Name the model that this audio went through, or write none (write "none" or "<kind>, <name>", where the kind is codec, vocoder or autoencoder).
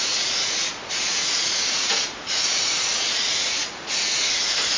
vocoder, Vocos